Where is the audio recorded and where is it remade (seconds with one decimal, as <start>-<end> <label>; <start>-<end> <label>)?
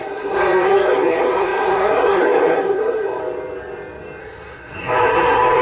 0.0-3.2 remade; 3.2-4.2 recorded; 4.2-5.6 remade